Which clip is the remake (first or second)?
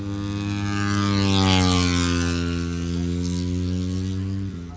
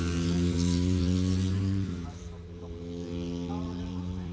second